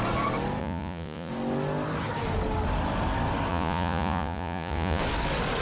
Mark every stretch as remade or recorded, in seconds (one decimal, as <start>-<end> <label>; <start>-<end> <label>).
0.0-0.6 recorded; 0.6-1.3 remade; 1.3-3.5 recorded; 3.5-5.0 remade; 5.0-5.6 recorded